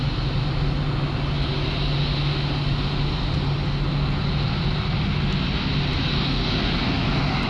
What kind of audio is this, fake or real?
real